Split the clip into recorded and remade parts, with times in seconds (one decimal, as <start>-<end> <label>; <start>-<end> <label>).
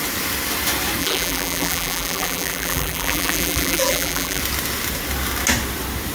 0.0-1.0 recorded; 1.0-4.4 remade; 4.4-6.1 recorded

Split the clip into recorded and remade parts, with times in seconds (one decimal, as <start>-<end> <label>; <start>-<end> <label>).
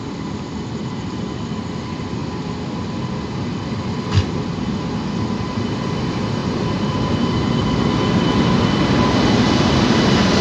0.0-10.4 recorded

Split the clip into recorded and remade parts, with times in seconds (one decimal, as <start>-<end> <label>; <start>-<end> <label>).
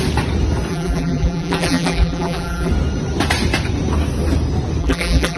0.0-0.7 recorded; 0.7-2.7 remade; 2.7-4.8 recorded; 4.8-5.4 remade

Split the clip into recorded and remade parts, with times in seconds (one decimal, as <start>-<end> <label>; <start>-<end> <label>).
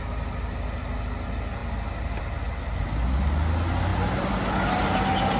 0.0-3.9 recorded; 3.9-4.8 remade; 4.8-5.4 recorded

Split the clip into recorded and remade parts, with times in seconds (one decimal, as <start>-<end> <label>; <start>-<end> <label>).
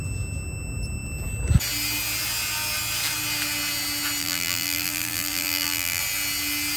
0.0-4.2 recorded; 4.2-6.0 remade; 6.0-6.8 recorded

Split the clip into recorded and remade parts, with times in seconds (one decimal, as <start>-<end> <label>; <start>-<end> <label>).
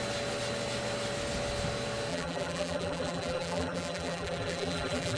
0.0-2.1 recorded; 2.1-5.2 remade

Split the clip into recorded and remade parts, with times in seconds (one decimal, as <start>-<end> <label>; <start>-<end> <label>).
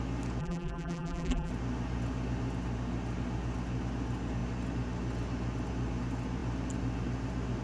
0.0-0.4 recorded; 0.4-1.5 remade; 1.5-7.6 recorded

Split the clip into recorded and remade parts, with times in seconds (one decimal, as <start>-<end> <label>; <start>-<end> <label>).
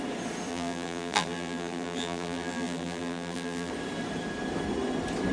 0.0-0.5 recorded; 0.5-3.7 remade; 3.7-5.3 recorded